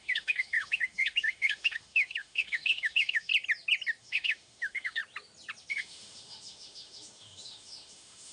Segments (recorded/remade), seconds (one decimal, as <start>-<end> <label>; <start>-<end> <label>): 0.0-3.3 remade; 3.3-4.0 recorded; 4.0-5.0 remade; 5.0-5.7 recorded; 5.7-8.3 remade

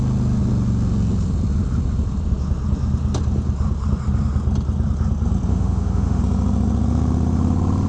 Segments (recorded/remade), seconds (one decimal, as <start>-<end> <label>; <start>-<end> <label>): 0.0-5.5 recorded; 5.5-6.2 remade; 6.2-7.9 recorded

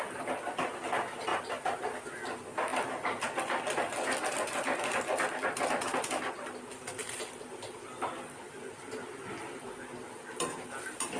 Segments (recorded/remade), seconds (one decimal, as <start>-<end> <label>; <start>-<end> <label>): 0.0-11.2 recorded

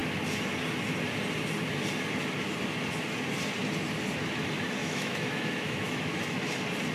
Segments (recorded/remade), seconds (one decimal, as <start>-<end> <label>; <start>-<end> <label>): 0.0-4.8 recorded; 4.8-6.4 remade; 6.4-6.9 recorded

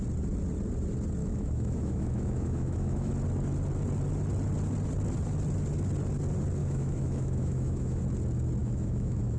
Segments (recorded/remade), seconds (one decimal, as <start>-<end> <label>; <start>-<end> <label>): 0.0-1.2 recorded; 1.2-3.1 remade; 3.1-6.6 recorded; 6.6-8.0 remade; 8.0-8.6 recorded; 8.6-9.4 remade